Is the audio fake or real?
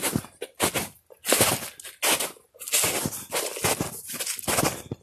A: real